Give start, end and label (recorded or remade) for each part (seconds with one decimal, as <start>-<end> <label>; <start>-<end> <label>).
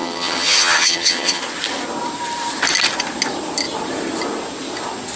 0.0-1.4 remade; 1.4-5.2 recorded